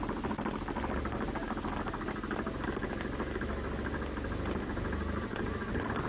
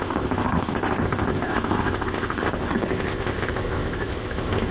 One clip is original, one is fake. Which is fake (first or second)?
second